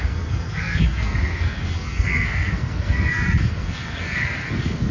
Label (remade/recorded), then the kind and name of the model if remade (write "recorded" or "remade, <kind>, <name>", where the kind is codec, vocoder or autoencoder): remade, codec, SNAC